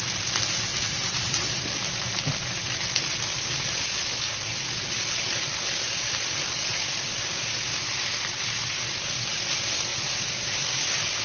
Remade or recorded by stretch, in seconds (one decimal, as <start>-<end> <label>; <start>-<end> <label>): 0.0-9.9 recorded; 9.9-10.7 remade; 10.7-11.2 recorded